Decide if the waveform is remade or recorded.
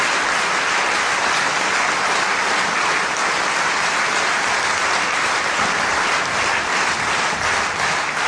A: recorded